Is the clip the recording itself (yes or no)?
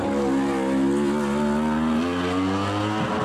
yes